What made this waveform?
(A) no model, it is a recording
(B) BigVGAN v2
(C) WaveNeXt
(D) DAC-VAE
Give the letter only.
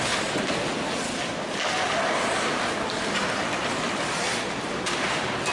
A